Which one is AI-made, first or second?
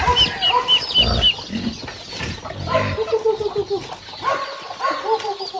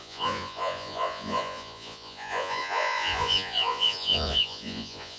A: second